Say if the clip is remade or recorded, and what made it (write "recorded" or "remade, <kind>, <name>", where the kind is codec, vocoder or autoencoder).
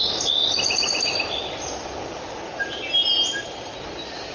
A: recorded